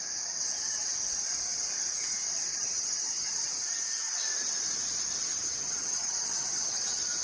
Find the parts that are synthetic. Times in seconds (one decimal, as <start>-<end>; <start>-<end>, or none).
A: 2.5-3.3; 5.3-6.8